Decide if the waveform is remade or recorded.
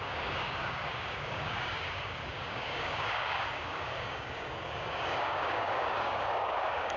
remade